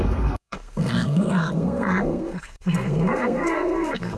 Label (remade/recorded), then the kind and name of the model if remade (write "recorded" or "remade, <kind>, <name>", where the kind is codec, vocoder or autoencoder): remade, codec, SNAC